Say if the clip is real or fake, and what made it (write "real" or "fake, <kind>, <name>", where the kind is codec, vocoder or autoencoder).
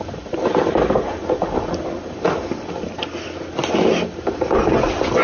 real